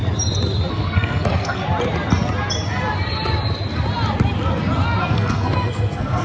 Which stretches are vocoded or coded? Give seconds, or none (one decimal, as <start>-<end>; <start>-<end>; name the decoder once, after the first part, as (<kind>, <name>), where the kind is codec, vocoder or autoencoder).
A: 0.7-1.6 (codec, SNAC); 5.0-6.2